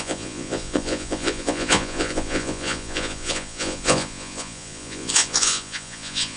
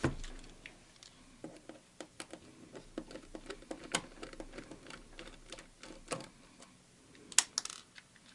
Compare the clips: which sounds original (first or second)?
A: second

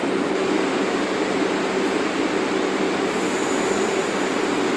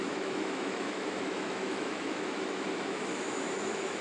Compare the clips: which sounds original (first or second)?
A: first